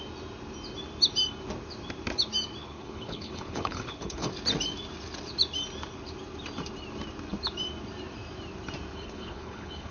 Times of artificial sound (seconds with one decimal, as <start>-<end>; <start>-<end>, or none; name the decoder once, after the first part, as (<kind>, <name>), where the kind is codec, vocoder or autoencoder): 2.6-4.3 (codec, HILCodec); 8.9-9.9